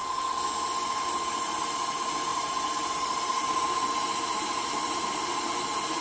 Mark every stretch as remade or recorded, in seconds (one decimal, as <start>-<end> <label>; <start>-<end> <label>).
0.0-2.3 recorded; 2.3-6.0 remade